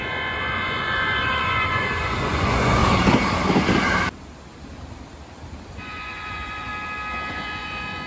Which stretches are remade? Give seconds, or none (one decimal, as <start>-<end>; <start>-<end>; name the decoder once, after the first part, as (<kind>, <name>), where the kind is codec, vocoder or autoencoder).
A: 0.0-2.8 (vocoder, Vocos); 5.7-6.7; 7.3-8.1